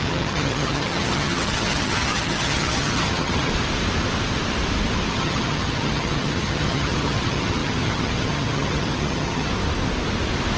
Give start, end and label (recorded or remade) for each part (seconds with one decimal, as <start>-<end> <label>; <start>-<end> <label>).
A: 0.0-3.5 remade; 3.5-5.1 recorded; 5.1-9.5 remade; 9.5-10.6 recorded

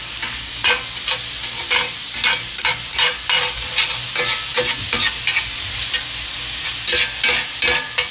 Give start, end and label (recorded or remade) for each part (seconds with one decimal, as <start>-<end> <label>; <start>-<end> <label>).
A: 0.0-8.1 recorded